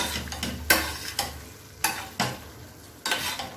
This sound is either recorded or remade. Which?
recorded